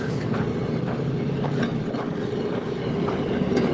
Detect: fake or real real